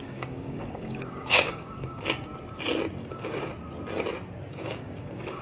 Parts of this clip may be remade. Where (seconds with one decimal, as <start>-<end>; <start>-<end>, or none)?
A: 0.0-2.3; 3.1-3.5; 4.5-5.4